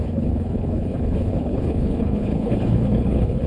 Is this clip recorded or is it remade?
remade